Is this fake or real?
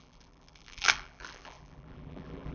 fake